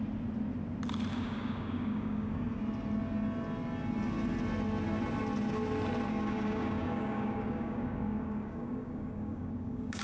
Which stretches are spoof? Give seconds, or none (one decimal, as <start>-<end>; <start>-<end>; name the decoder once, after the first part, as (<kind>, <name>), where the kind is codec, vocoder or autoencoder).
1.1-2.6 (codec, DAC); 6.1-10.0